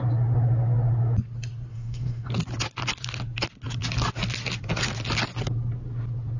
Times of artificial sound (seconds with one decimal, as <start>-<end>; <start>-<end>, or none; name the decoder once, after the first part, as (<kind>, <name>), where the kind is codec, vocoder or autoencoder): 1.7-2.3 (codec, SNAC)